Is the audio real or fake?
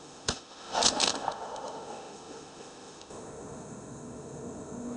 fake